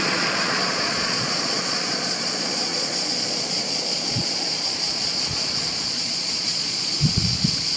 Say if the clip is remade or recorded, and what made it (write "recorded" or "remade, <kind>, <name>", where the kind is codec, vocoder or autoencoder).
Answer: remade, vocoder, Vocos